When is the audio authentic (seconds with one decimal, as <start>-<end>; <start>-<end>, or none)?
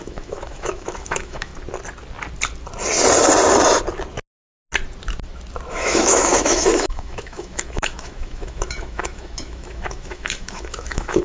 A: 1.5-5.7